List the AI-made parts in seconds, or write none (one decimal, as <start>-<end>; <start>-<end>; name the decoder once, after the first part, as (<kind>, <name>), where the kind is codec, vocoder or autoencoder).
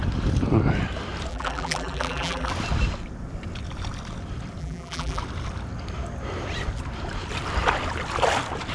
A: 1.3-2.5 (vocoder, BigVGAN v2); 4.6-5.2